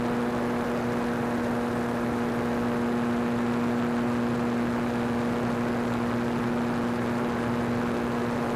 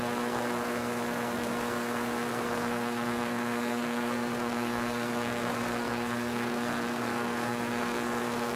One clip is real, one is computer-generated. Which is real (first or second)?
first